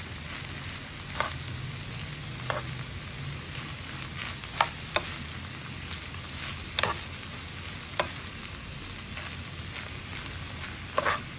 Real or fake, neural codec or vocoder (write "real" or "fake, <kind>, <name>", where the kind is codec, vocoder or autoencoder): real